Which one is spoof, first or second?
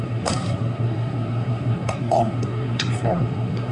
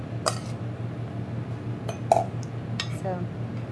first